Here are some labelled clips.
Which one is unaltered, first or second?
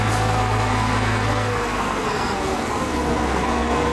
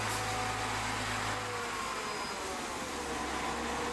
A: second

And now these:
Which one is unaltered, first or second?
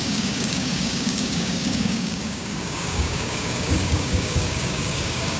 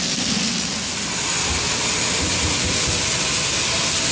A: second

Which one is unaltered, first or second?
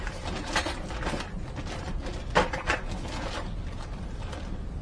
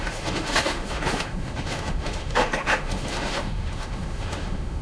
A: first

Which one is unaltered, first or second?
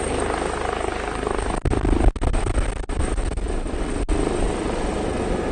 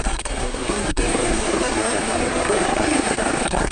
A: first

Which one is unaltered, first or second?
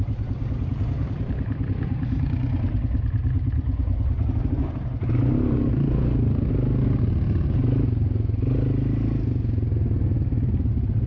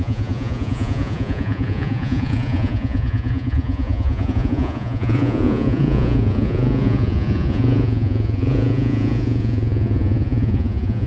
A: first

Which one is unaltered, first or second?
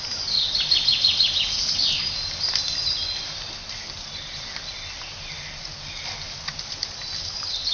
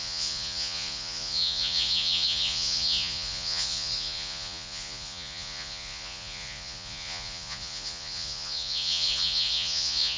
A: first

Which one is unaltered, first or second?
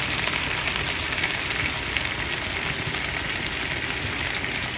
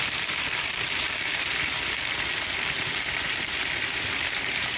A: first